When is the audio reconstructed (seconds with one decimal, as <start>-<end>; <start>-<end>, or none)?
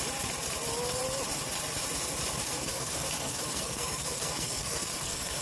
2.4-5.4